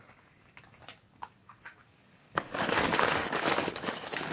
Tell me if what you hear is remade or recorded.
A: remade